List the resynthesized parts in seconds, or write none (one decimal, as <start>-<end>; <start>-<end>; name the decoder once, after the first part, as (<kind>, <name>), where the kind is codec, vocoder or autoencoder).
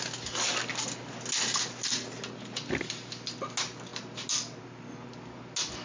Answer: none